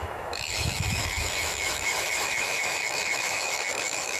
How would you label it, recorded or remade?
remade